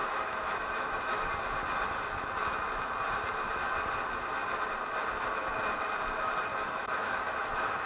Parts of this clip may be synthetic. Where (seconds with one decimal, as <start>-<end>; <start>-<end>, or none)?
0.0-1.3; 6.5-7.9